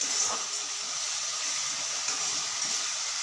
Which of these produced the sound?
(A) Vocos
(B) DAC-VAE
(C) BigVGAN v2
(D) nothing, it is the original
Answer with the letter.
D